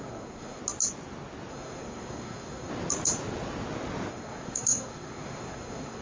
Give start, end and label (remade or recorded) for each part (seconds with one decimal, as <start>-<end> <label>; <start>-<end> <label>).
0.0-0.6 remade; 0.6-1.5 recorded; 1.5-2.7 remade; 2.7-4.1 recorded; 4.1-6.0 remade